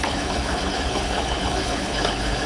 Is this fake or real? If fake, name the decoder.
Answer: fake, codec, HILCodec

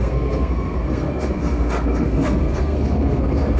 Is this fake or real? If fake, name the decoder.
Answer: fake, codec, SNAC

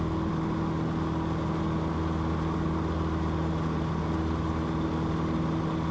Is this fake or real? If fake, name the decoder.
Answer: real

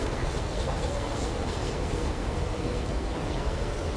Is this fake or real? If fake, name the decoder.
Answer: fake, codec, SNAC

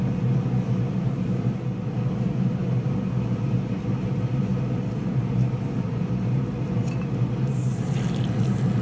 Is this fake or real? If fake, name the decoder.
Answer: real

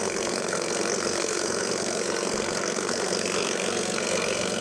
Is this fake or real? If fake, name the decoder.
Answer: fake, codec, SNAC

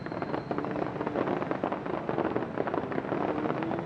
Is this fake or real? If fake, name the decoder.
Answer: real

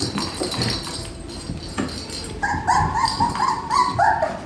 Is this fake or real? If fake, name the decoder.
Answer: real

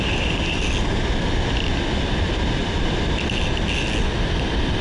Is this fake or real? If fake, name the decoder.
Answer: real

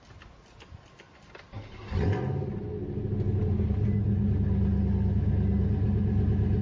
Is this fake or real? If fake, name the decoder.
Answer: real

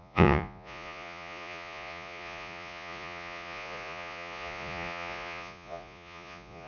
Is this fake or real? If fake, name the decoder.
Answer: fake, vocoder, Vocos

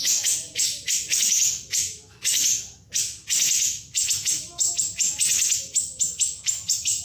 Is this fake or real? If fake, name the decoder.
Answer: fake, autoencoder, DAC-VAE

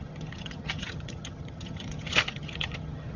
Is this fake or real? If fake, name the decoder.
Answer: fake, vocoder, HiFi-GAN